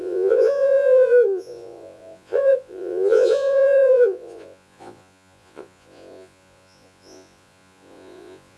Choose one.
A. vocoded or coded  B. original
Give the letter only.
A